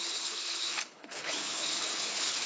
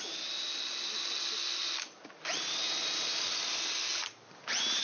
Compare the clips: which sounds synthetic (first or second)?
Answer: first